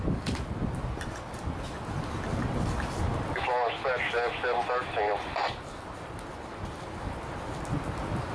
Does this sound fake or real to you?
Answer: real